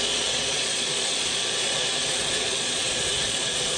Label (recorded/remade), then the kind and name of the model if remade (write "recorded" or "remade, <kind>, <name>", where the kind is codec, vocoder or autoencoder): remade, vocoder, Vocos